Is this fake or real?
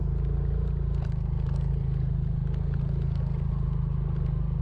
real